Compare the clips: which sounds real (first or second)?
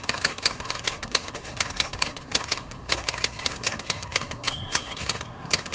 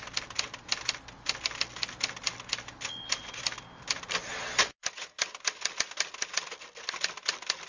second